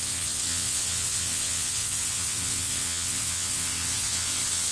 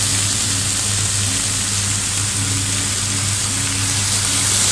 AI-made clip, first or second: first